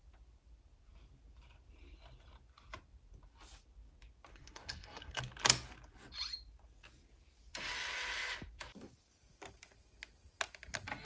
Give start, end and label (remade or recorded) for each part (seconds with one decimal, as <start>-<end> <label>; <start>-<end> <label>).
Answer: 0.0-4.3 recorded; 4.3-5.2 remade; 5.2-11.1 recorded